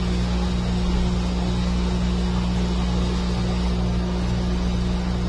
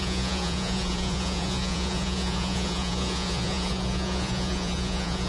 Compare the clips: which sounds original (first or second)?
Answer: first